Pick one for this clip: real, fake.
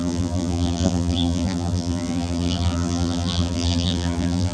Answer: fake